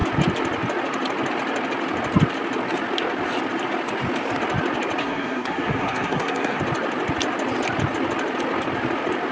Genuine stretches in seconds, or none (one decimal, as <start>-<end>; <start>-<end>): 0.0-5.0; 6.6-9.3